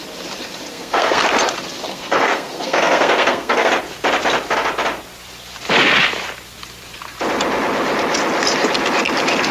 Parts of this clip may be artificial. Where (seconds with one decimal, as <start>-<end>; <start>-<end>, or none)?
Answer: 0.7-1.2; 1.9-3.7